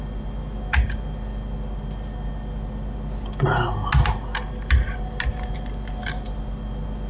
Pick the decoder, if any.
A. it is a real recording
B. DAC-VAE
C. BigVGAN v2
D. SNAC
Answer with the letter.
A